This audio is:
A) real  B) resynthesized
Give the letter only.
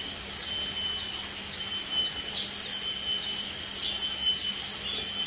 A